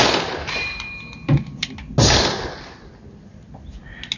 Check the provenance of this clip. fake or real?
real